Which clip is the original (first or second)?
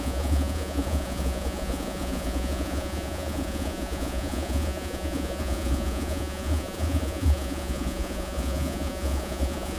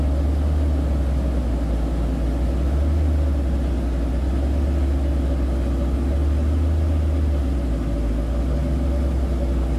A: second